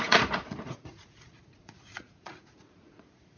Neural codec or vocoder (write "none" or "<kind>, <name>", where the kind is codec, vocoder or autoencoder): vocoder, Vocos